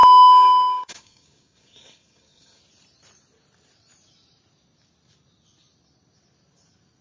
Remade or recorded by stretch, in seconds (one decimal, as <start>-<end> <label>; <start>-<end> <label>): 0.0-2.6 remade; 2.6-7.0 recorded